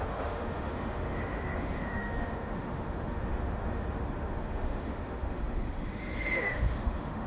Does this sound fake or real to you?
fake